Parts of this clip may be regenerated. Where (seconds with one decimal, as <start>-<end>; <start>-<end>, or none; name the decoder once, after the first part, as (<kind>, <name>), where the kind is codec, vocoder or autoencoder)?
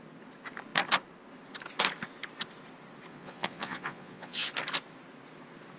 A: 3.1-4.5 (vocoder, Vocos)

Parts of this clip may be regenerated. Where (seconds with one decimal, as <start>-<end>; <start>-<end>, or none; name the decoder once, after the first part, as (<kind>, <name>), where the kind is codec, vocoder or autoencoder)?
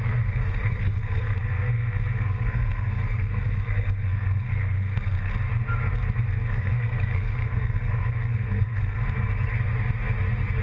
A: 0.0-5.3 (codec, SNAC); 6.5-9.0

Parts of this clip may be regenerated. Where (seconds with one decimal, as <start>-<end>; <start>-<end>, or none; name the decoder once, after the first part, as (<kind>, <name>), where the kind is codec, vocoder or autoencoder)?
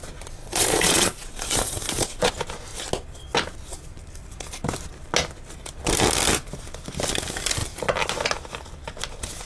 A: 0.4-2.3 (vocoder, Vocos)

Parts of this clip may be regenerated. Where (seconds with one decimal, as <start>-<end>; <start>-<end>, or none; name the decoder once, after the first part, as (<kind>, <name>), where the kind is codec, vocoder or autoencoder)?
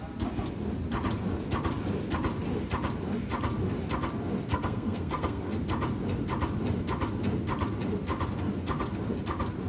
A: 4.5-5.6 (codec, SNAC)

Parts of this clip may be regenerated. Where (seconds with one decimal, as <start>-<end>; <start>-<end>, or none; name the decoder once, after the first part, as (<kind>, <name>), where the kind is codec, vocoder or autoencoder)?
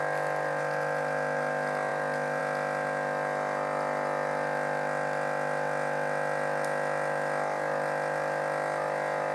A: none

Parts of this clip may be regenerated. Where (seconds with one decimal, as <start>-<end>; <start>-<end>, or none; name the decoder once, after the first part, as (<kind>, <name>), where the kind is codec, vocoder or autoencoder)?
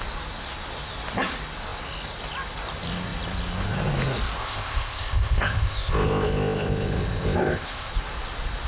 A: 4.4-7.9 (codec, ZipCodec)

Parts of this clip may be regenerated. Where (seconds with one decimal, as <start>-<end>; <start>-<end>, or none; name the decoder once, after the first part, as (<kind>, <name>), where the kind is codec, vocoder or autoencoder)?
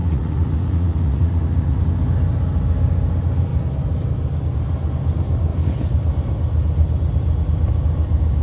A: 0.0-1.8 (vocoder, Vocos)